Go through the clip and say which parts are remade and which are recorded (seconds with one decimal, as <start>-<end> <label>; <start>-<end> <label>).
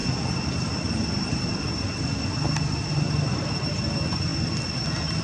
0.0-5.2 recorded